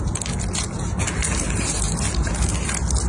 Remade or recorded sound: recorded